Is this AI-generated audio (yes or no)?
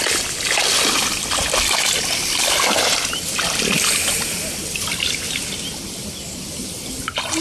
no